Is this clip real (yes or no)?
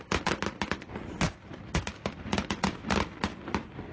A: yes